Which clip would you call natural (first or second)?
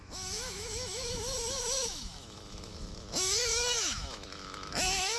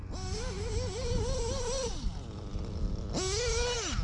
second